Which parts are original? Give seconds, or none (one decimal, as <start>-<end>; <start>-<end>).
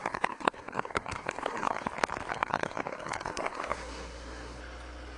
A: 1.9-2.3; 4.6-5.2